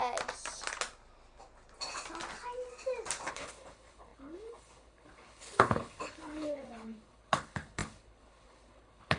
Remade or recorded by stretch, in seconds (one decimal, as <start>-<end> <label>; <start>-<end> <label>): 0.0-3.3 recorded; 3.3-9.2 remade